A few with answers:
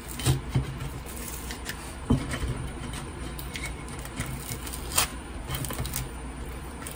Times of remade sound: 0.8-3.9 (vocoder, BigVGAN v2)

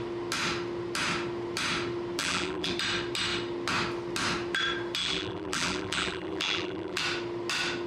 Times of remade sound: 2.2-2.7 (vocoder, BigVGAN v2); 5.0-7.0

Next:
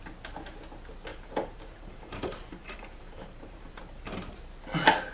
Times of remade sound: 1.1-3.8 (vocoder, BigVGAN v2)

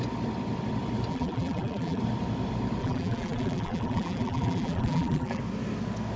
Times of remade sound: 1.1-2.0 (vocoder, BigVGAN v2); 2.8-5.4

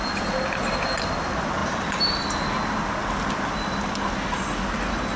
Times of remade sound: none